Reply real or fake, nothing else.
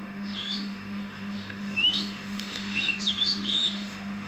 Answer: fake